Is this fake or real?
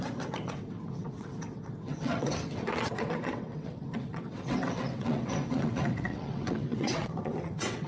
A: fake